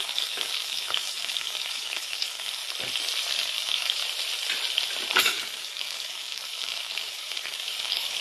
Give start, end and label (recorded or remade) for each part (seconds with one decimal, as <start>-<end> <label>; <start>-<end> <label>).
0.0-2.6 remade; 2.6-3.3 recorded; 3.3-4.0 remade; 4.0-5.2 recorded; 5.2-8.2 remade